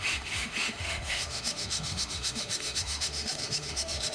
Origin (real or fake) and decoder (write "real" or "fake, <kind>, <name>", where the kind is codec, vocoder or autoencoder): fake, autoencoder, DAC-VAE